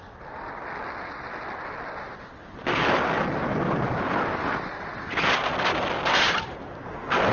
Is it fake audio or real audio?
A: real